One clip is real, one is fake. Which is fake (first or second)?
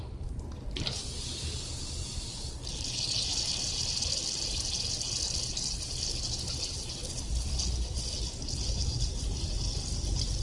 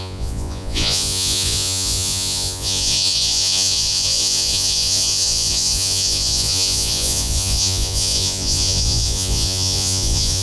second